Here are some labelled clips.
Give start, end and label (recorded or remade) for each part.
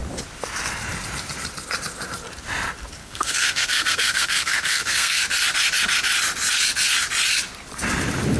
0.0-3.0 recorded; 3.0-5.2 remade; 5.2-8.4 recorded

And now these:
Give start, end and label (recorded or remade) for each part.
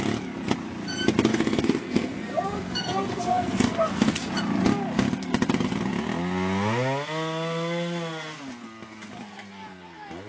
0.0-1.3 recorded; 1.3-4.3 remade; 4.3-10.3 recorded